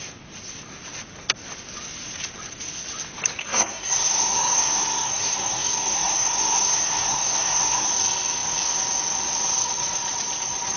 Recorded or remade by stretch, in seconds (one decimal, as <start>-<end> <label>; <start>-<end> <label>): 0.0-3.4 recorded; 3.4-7.9 remade; 7.9-10.8 recorded